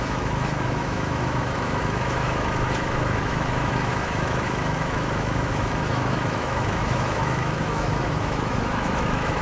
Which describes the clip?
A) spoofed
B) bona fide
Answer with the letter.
A